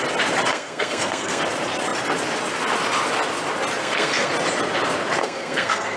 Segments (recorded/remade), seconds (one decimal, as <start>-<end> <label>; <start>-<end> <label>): 0.0-0.5 recorded; 0.5-1.4 remade; 1.4-3.8 recorded; 3.8-4.3 remade; 4.3-5.2 recorded; 5.2-6.0 remade